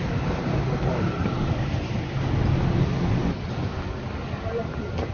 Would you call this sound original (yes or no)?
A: yes